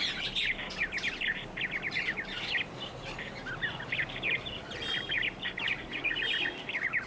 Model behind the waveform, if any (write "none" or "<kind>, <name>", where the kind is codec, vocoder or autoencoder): none